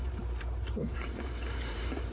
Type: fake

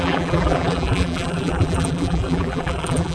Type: fake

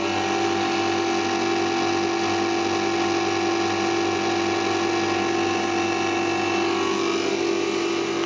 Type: real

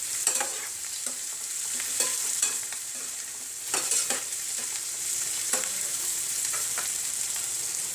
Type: fake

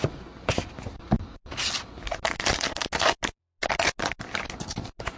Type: real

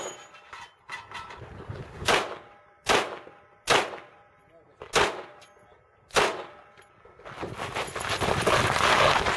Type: real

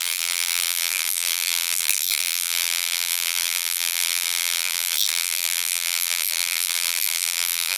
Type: fake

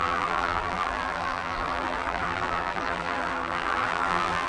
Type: fake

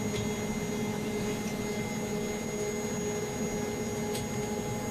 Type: real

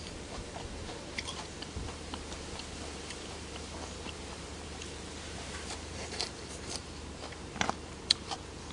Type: fake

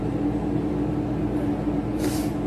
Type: real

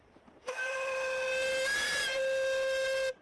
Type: real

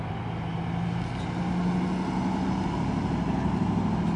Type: real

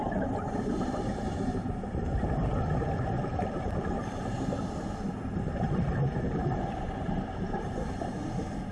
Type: fake